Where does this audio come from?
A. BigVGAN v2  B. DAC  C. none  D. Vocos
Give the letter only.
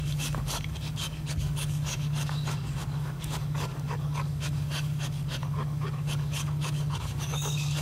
B